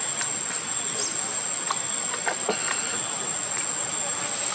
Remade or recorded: recorded